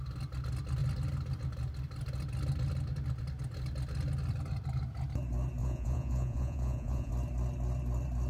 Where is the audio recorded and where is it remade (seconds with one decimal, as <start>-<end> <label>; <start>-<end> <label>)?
0.0-5.6 recorded; 5.6-7.1 remade; 7.1-8.3 recorded